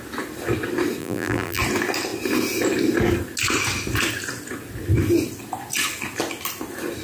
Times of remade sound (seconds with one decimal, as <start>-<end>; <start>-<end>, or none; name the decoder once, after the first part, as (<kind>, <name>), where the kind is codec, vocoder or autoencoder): 1.0-1.6 (vocoder, BigVGAN v2)